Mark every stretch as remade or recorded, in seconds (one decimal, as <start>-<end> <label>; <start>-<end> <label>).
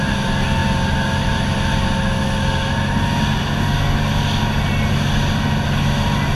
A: 0.0-6.4 recorded